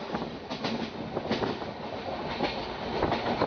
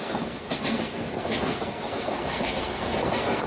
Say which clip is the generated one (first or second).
second